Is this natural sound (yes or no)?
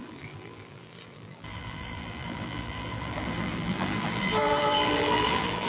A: no